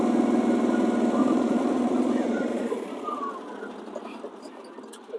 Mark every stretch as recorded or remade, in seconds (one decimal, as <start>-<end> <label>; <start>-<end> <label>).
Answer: 0.0-1.2 recorded; 1.2-3.3 remade; 3.3-5.2 recorded